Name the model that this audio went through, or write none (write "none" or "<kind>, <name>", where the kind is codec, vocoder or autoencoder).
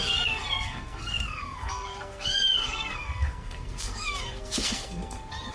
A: codec, SNAC